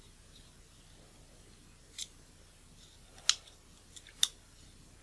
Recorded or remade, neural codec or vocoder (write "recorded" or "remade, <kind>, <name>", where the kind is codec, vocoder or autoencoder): recorded